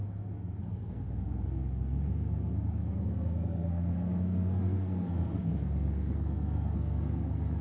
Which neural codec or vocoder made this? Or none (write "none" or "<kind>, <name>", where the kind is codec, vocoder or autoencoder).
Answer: codec, SNAC